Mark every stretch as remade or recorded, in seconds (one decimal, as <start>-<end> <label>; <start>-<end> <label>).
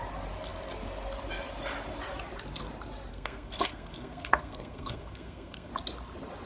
0.0-3.1 recorded; 3.1-5.7 remade; 5.7-6.5 recorded